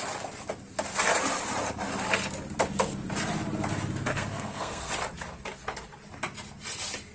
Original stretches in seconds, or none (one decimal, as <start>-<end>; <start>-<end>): 0.0-4.1; 4.9-7.1